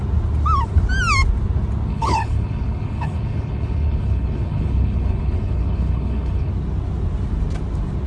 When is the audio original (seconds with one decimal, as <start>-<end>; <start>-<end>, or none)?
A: 0.0-1.9; 6.5-8.1